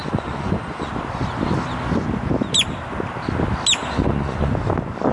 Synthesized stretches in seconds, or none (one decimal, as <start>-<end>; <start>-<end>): 0.0-0.9; 3.8-4.5